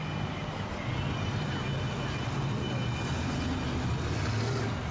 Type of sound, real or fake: fake